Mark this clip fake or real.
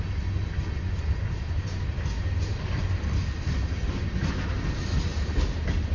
real